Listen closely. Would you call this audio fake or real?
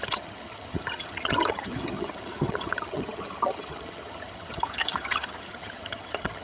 fake